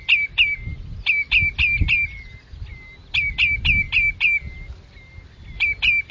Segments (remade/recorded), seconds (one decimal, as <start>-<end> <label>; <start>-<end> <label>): 0.0-6.1 recorded

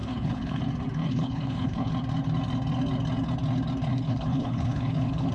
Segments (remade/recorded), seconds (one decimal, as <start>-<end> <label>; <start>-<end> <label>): 0.0-0.6 remade; 0.6-1.0 recorded; 1.0-1.9 remade; 1.9-3.9 recorded; 3.9-5.3 remade

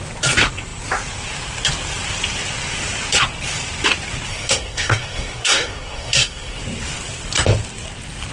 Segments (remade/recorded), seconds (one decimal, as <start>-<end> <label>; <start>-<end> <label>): 0.0-4.3 recorded; 4.3-6.6 remade; 6.6-8.3 recorded

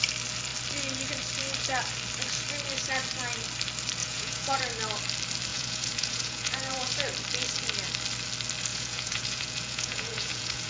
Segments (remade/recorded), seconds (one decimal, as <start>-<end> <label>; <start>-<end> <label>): 0.0-4.0 recorded; 4.0-4.6 remade; 4.6-5.5 recorded; 5.5-6.9 remade; 6.9-8.7 recorded; 8.7-10.7 remade